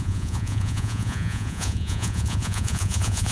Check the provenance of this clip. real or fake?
fake